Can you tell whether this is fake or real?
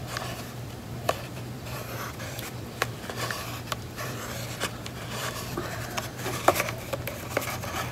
fake